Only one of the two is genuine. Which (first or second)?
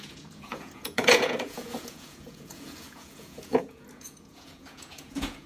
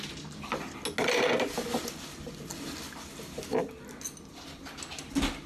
second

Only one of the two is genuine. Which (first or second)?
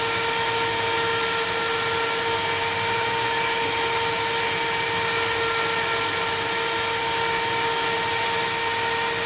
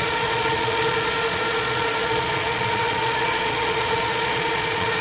first